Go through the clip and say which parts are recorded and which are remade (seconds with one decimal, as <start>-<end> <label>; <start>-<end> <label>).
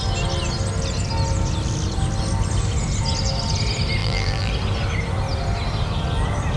0.0-4.0 recorded; 4.0-4.5 remade; 4.5-6.6 recorded